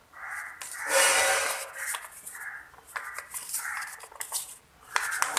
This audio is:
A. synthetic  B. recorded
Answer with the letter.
B